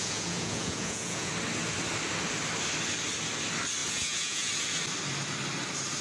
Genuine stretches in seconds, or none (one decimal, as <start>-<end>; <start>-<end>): 1.3-3.8; 4.5-6.0